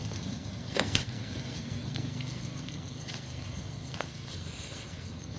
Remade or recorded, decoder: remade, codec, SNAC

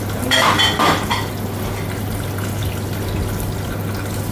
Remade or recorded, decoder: recorded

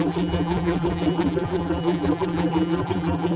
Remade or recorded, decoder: remade, vocoder, BigVGAN v2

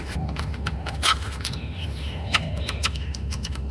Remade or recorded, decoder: remade, autoencoder, DAC-VAE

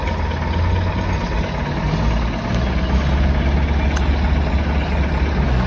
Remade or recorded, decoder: recorded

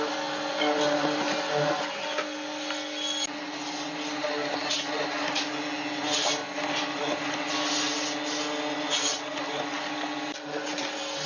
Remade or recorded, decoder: recorded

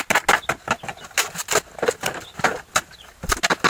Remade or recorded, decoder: recorded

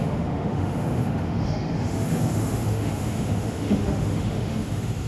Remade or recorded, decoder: remade, autoencoder, DAC-VAE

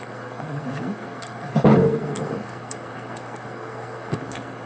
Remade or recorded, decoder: remade, codec, SNAC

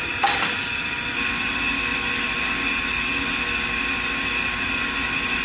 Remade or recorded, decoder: recorded